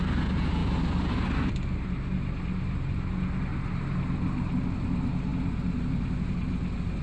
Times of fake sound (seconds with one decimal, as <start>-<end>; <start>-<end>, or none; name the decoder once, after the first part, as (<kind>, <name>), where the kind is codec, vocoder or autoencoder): none